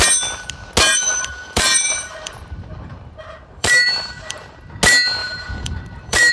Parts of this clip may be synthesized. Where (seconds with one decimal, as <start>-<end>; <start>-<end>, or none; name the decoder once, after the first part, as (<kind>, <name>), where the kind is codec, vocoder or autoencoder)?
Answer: 0.9-4.7 (vocoder, BigVGAN v2); 5.2-6.3